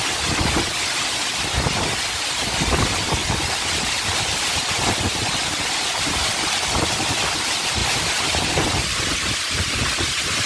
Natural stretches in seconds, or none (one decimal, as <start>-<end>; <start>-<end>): 0.0-10.5